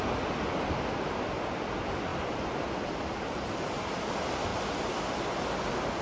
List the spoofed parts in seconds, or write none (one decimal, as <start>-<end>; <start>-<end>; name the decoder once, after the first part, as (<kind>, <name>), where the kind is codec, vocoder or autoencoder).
none

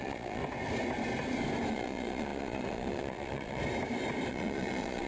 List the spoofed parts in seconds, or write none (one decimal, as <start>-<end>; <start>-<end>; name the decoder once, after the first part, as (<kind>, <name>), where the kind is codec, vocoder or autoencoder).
0.0-0.4 (vocoder, Vocos); 1.7-3.6; 4.3-5.1

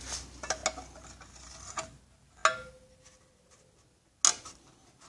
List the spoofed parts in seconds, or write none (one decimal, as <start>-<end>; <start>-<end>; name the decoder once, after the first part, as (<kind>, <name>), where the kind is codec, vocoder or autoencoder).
none